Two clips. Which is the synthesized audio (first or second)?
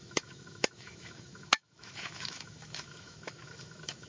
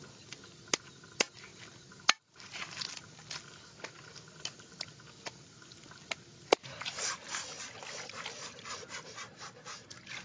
first